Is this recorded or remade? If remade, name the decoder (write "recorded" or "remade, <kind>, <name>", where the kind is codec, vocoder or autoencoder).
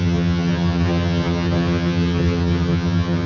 remade, vocoder, HiFi-GAN